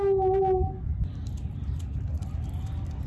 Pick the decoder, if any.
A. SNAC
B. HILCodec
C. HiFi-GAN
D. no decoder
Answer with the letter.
D